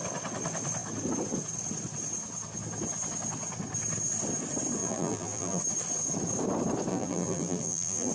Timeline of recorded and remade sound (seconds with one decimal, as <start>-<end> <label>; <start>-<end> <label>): 0.0-4.8 recorded; 4.8-5.6 remade; 5.6-6.9 recorded; 6.9-8.1 remade